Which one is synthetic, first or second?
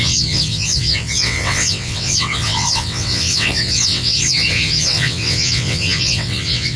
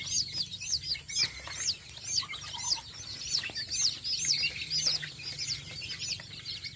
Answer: first